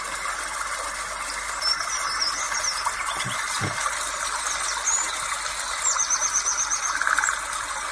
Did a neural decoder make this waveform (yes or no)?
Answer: no